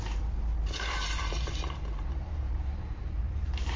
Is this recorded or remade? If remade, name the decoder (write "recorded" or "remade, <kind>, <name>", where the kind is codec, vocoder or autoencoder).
remade, vocoder, BigVGAN v2